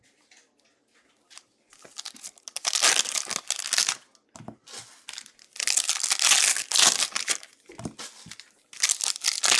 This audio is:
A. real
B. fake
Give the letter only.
A